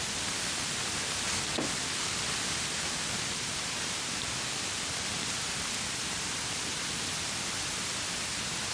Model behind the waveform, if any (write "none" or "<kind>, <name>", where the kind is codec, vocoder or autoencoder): vocoder, BigVGAN v2